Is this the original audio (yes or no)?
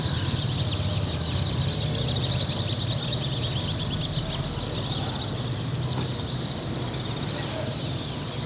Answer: yes